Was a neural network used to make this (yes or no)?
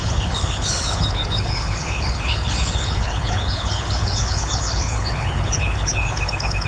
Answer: yes